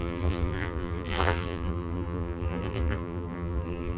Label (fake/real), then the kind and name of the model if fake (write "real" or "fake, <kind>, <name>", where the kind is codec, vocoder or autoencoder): fake, vocoder, BigVGAN v2